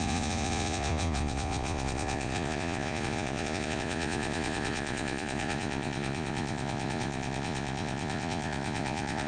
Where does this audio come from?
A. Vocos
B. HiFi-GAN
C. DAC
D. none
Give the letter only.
A